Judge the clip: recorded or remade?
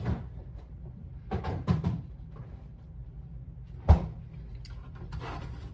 recorded